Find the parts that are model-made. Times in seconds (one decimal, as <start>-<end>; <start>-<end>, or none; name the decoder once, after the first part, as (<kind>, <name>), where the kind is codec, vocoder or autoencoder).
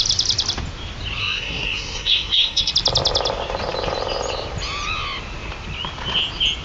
1.2-2.7 (codec, SNAC)